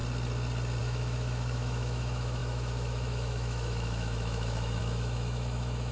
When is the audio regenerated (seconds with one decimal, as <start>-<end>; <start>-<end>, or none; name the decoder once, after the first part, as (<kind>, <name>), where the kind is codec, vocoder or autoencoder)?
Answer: 0.8-5.9 (autoencoder, DAC-VAE)